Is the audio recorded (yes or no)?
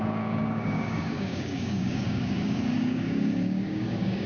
no